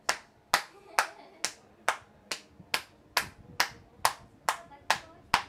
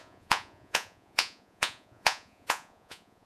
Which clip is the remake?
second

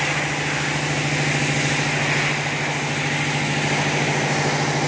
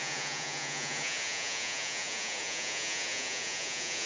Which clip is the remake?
second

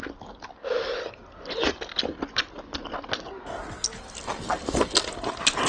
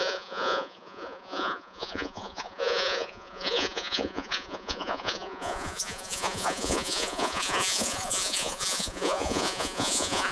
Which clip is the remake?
second